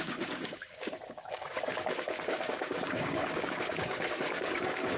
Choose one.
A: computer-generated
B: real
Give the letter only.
A